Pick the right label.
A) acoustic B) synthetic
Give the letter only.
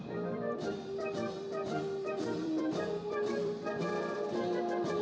B